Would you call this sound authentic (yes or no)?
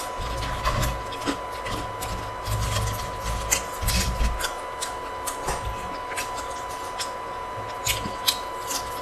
yes